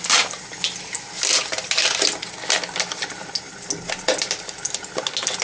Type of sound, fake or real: real